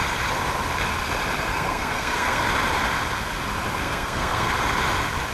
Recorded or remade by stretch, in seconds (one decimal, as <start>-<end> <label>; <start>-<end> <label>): 0.0-1.5 recorded; 1.5-2.4 remade; 2.4-3.8 recorded; 3.8-4.5 remade; 4.5-5.3 recorded